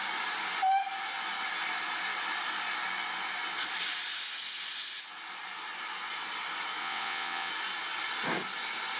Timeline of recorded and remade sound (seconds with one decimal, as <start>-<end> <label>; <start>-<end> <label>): 0.0-6.8 recorded; 6.8-7.5 remade; 7.5-9.0 recorded